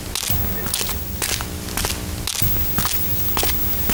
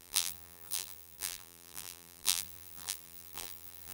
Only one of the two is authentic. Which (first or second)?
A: first